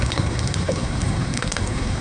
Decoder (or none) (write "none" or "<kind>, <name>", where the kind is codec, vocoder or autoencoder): codec, SNAC